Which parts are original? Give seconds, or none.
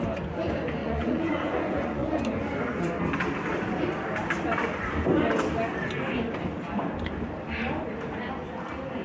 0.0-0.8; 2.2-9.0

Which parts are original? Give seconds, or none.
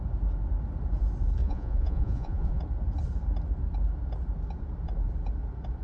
0.0-1.4; 2.6-5.8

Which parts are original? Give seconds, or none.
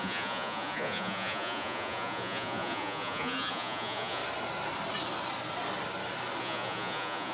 4.2-6.4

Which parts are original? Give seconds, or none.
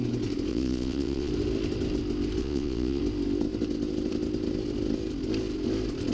0.0-0.5; 1.3-2.4; 3.0-6.1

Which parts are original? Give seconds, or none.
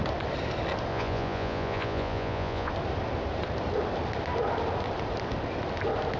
0.0-0.9; 2.7-6.2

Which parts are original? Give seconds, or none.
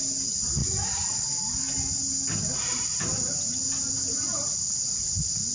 0.0-5.5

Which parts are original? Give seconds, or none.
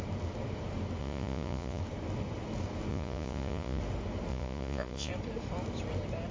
0.0-1.0; 1.8-2.9; 3.8-4.3; 5.1-6.3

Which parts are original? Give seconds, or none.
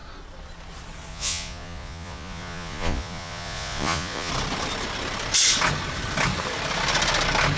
0.0-1.1; 4.3-7.6